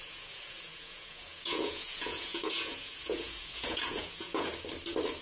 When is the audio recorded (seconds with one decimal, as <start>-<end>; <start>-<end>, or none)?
4.5-5.2